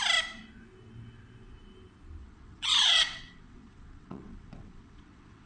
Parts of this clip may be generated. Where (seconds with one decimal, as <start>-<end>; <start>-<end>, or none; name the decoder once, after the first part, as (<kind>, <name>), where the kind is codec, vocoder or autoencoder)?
2.2-5.5 (vocoder, WaveNeXt)